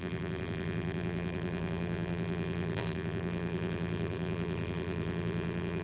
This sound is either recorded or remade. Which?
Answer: remade